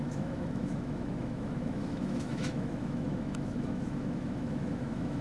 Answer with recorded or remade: remade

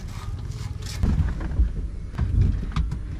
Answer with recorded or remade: recorded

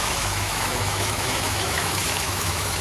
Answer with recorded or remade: remade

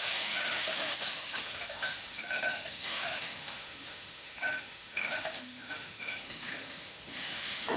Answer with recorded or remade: remade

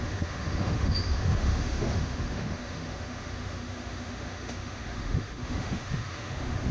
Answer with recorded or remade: remade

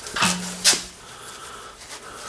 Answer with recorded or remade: recorded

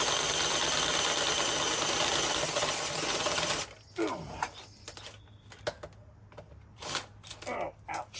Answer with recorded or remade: recorded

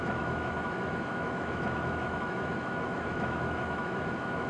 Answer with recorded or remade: remade